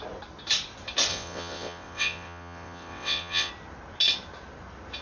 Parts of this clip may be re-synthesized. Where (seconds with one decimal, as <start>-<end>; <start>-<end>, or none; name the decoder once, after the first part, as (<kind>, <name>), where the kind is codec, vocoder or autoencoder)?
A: 1.1-3.5 (vocoder, WaveNeXt)